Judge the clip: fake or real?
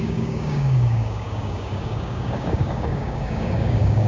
fake